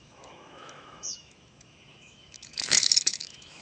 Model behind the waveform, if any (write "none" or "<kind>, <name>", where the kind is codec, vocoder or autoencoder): autoencoder, DAC-VAE